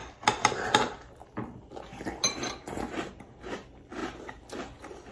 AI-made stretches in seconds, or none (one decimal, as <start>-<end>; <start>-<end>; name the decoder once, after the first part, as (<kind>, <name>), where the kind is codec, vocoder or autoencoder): none